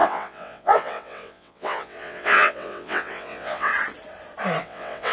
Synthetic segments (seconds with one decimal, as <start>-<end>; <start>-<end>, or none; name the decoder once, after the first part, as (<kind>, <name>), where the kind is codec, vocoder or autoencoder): 0.0-3.7 (vocoder, WaveNeXt); 4.6-5.1

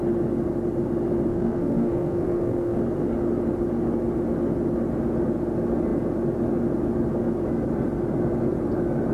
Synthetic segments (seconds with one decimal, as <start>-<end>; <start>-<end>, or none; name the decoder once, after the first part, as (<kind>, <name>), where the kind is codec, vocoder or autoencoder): 1.3-2.8 (codec, SNAC)

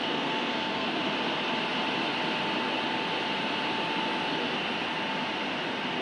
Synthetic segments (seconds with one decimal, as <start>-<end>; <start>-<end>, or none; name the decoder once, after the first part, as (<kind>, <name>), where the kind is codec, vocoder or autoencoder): 0.0-1.0 (codec, SNAC)

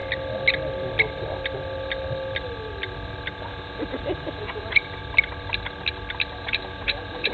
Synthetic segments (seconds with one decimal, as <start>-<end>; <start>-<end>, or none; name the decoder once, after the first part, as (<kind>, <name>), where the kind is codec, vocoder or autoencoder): 3.3-5.0 (vocoder, Vocos); 6.4-7.3

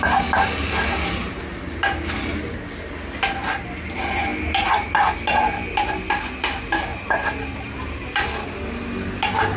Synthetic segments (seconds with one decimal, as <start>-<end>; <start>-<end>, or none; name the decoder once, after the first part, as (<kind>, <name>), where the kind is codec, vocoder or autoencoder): 6.9-8.2 (vocoder, BigVGAN v2)

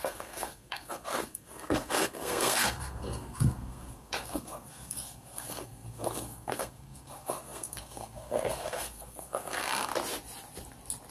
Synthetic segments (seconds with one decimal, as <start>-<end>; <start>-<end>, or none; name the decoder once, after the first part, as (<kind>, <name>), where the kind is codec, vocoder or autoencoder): 0.0-9.9 (codec, SNAC)

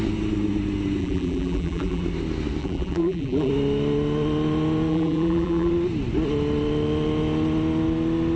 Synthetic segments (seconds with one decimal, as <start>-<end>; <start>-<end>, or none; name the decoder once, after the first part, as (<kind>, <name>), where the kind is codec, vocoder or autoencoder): 1.0-2.0 (vocoder, BigVGAN v2); 2.6-3.5; 4.9-5.7